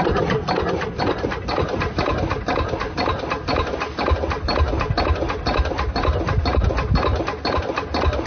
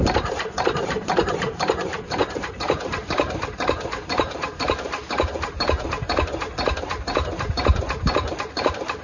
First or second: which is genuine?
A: first